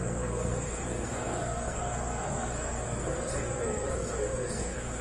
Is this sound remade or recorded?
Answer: remade